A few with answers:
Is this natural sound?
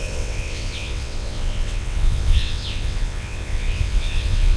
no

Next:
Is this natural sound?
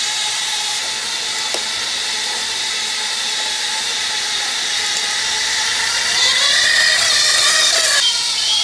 yes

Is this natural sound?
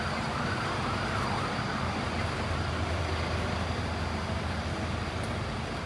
yes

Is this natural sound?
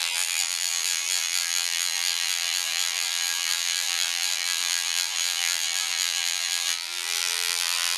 no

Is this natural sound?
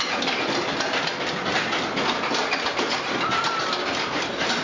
yes